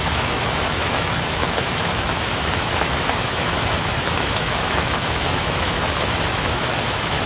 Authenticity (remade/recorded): remade